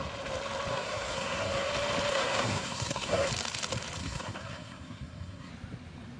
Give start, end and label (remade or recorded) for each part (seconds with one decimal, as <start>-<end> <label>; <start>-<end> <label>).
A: 0.0-0.7 recorded; 0.7-1.7 remade; 1.7-2.1 recorded; 2.1-3.3 remade; 3.3-4.0 recorded; 4.0-5.5 remade; 5.5-6.2 recorded